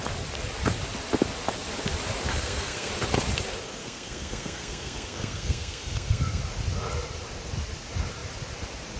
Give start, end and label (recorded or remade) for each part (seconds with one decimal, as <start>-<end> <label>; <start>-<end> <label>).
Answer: 0.0-2.3 recorded; 2.3-2.9 remade; 2.9-3.8 recorded; 3.8-6.4 remade; 6.4-9.0 recorded

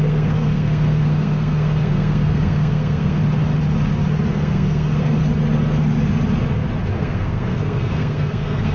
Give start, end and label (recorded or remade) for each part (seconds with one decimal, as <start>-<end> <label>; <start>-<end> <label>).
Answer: 0.0-3.2 remade; 3.2-4.3 recorded; 4.3-5.2 remade; 5.2-6.9 recorded; 6.9-8.7 remade

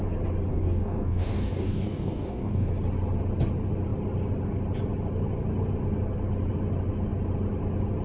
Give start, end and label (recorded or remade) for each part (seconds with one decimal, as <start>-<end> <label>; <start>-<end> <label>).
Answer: 0.0-0.5 recorded; 0.5-2.7 remade; 2.7-8.0 recorded